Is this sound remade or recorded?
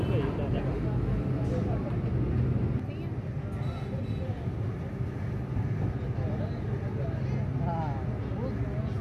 recorded